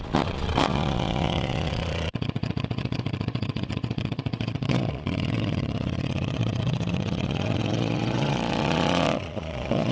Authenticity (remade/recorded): remade